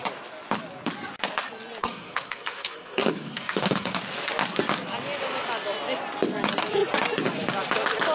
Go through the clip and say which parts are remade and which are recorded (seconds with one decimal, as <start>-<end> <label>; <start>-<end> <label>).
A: 0.0-1.8 recorded; 1.8-3.9 remade; 3.9-8.1 recorded